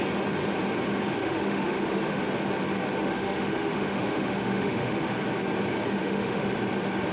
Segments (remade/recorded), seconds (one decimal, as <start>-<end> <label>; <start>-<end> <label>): 0.0-1.2 recorded; 1.2-2.2 remade; 2.2-3.0 recorded; 3.0-5.1 remade; 5.1-6.0 recorded; 6.0-6.6 remade; 6.6-7.1 recorded